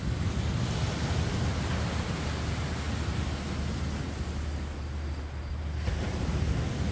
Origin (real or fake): real